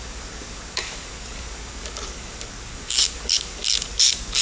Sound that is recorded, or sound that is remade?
remade